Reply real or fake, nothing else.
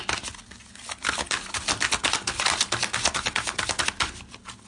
real